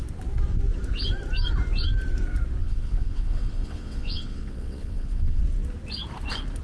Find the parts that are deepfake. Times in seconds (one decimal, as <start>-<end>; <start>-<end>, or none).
2.6-5.4